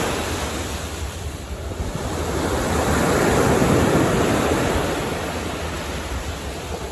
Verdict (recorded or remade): recorded